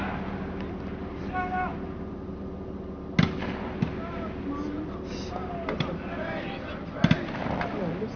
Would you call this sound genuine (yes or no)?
yes